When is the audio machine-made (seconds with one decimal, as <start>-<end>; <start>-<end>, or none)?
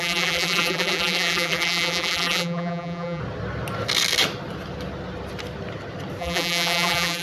0.0-3.2; 6.2-7.2